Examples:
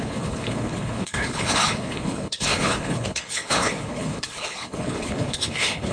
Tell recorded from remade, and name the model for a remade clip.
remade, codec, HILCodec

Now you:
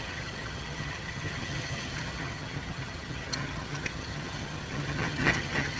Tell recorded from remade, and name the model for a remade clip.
remade, vocoder, HiFi-GAN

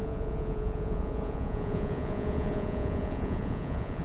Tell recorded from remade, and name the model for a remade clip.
remade, vocoder, Vocos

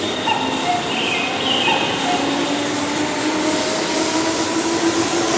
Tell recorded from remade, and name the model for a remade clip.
recorded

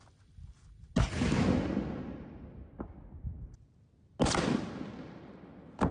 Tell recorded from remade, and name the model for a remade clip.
recorded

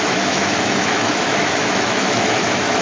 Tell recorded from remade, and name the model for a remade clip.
remade, autoencoder, DAC-VAE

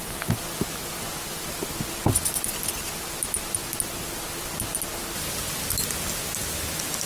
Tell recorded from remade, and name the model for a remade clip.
recorded